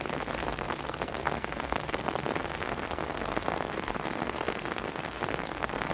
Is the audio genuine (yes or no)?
no